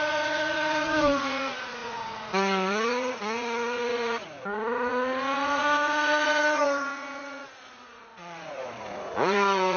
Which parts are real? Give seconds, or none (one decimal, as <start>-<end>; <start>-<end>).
none

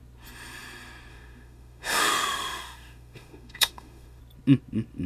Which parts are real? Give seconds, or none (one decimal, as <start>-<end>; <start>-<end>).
0.0-1.1; 4.2-5.1

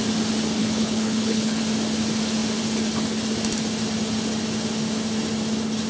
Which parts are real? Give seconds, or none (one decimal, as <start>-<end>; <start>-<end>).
0.0-0.6; 1.6-5.9

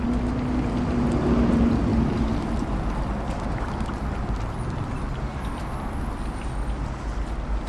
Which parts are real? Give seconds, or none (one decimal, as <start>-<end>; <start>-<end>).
0.0-1.9; 6.5-7.7

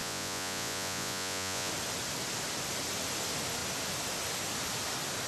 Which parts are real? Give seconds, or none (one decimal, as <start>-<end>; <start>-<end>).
1.7-5.3

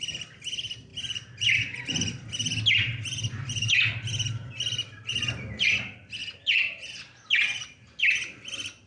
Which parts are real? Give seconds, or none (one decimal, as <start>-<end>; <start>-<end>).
0.0-8.9

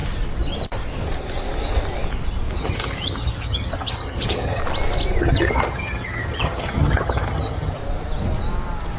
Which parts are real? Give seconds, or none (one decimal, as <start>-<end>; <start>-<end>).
0.0-2.6; 4.6-5.2; 7.8-9.0

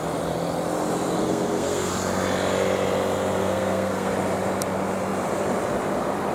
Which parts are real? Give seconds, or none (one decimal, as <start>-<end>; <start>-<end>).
0.0-1.2; 1.9-3.4; 4.1-6.3